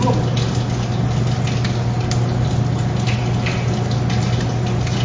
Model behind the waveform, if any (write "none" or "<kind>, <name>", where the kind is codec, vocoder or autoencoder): none